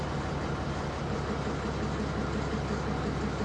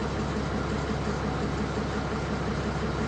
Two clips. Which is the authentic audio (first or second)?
first